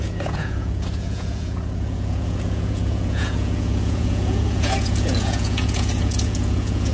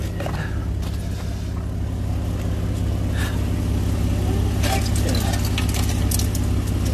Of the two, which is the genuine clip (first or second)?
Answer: second